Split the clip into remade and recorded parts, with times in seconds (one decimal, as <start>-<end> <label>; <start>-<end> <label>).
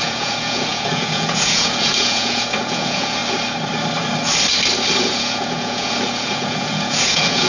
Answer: 0.0-3.2 remade; 3.2-5.0 recorded; 5.0-7.5 remade